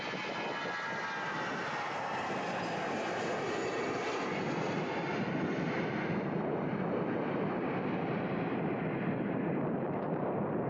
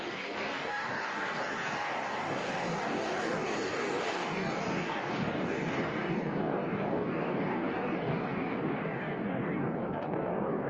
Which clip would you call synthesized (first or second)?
second